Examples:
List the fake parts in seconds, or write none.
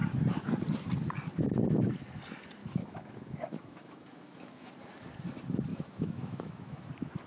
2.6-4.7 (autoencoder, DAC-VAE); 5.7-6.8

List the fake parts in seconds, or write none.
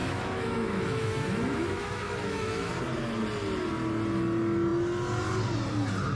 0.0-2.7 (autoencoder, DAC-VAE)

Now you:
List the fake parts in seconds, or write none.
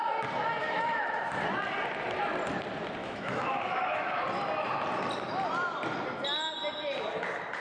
0.6-1.2 (autoencoder, DAC-VAE); 3.0-4.2